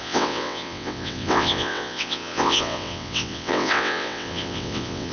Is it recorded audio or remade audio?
remade